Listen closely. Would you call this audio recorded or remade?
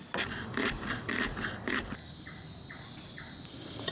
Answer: remade